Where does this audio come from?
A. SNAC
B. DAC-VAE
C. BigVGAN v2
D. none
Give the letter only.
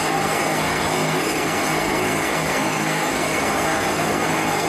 A